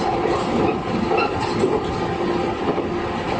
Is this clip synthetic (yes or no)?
no